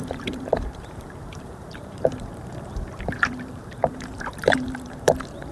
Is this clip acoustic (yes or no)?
no